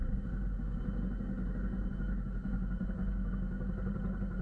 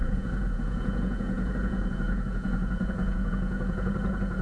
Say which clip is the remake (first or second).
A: second